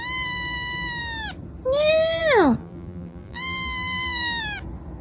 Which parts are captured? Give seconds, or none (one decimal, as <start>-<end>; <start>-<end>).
0.0-2.6; 4.4-5.0